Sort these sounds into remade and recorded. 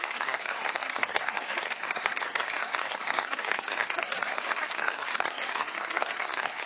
remade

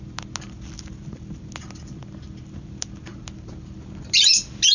recorded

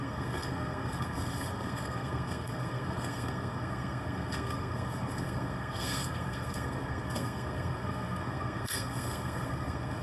remade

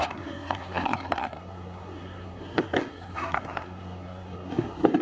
remade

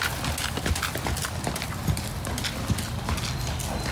recorded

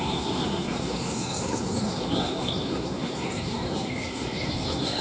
remade